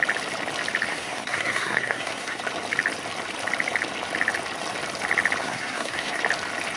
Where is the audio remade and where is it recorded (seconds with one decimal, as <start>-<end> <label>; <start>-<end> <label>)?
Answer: 0.0-0.9 recorded; 0.9-2.4 remade; 2.4-5.4 recorded; 5.4-6.2 remade; 6.2-6.8 recorded